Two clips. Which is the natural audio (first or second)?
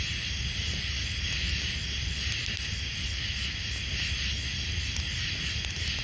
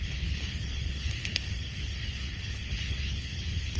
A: first